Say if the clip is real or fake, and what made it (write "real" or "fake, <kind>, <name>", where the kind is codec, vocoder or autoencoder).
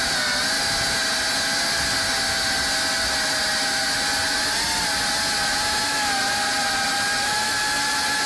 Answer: real